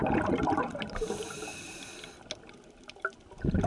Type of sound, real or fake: real